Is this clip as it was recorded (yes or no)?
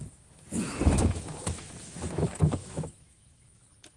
no